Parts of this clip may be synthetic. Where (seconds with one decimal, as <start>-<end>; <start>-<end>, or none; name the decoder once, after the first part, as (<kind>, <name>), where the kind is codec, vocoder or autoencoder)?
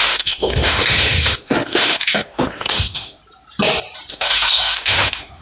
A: 0.0-3.2 (autoencoder, DAC-VAE); 4.1-5.4